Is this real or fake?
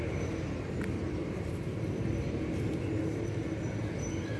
real